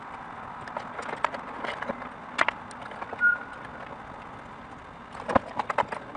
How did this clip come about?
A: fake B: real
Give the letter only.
B